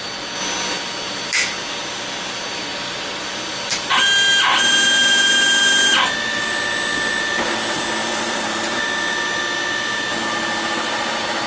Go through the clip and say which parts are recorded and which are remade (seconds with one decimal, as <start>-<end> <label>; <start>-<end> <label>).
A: 0.0-8.0 recorded; 8.0-8.8 remade; 8.8-11.5 recorded